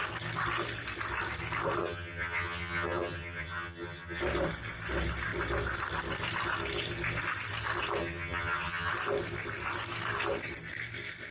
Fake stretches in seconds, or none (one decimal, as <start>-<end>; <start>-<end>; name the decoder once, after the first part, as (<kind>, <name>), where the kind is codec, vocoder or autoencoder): 1.8-4.2 (vocoder, HiFi-GAN); 8.0-8.9